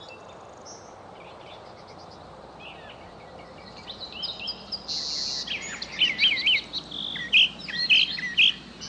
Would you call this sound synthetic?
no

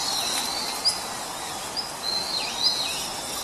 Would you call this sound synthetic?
no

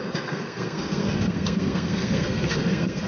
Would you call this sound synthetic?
yes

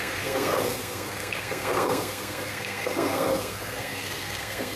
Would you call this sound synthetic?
yes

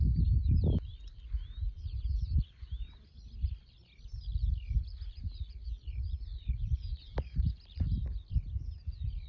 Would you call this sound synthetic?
no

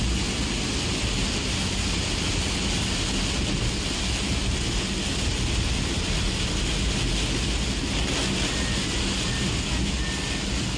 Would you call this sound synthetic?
no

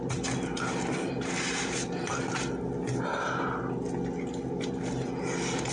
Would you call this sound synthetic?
no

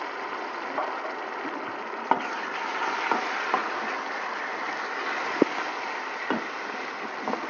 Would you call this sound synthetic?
no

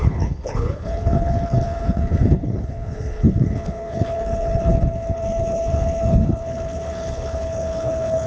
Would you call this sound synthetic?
yes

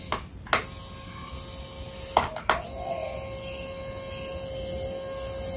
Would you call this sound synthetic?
no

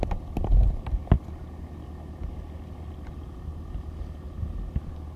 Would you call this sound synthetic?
no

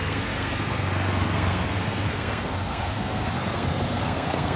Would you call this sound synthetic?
yes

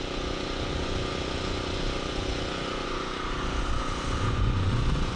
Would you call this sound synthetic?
yes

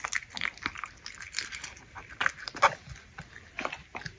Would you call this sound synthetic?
no